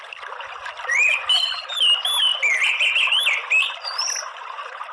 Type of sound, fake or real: real